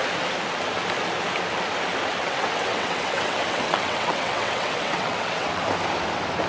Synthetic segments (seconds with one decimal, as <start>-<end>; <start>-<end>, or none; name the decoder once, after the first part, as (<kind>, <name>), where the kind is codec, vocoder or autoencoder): 2.2-5.6 (vocoder, WaveNeXt)